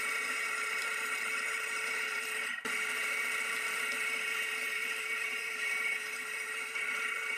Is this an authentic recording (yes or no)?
no